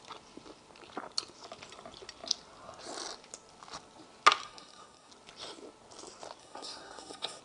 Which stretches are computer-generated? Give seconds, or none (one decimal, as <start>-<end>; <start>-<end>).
4.4-5.1; 6.4-7.4

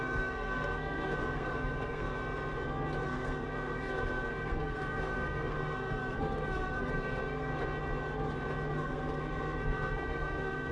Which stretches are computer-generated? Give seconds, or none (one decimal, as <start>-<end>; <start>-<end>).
0.0-2.2; 3.0-7.5; 8.7-10.7

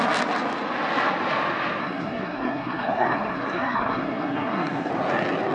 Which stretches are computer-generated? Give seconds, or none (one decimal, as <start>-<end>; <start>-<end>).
1.8-4.9